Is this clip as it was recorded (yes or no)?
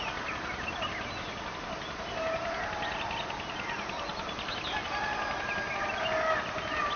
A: yes